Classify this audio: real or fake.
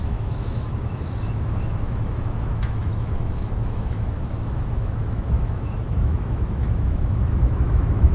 fake